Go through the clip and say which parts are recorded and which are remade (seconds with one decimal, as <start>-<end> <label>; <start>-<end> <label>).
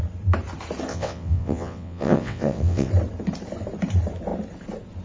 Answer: 0.0-0.9 recorded; 0.9-2.9 remade; 2.9-5.0 recorded